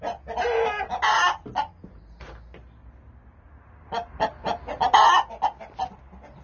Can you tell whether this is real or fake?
real